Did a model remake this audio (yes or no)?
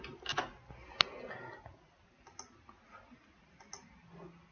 no